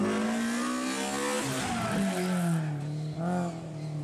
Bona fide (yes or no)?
yes